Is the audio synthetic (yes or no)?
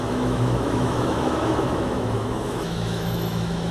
yes